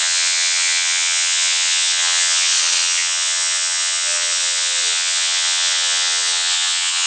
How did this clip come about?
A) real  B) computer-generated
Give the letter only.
B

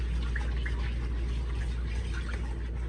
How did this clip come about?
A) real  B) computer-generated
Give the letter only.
A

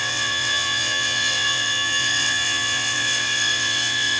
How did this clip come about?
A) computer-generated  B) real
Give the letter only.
A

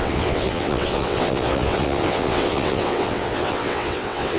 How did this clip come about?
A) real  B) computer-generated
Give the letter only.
B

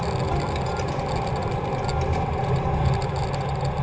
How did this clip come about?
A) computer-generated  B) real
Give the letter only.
B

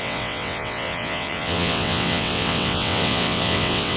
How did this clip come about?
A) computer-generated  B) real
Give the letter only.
A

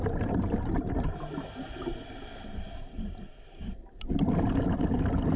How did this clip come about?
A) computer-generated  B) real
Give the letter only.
B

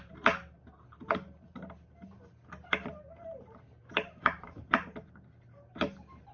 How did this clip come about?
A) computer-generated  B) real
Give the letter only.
B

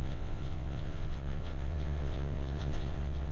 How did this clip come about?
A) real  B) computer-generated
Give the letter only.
B